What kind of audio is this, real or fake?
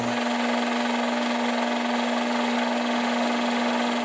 real